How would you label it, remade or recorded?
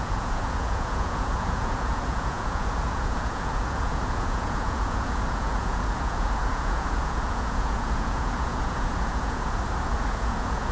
remade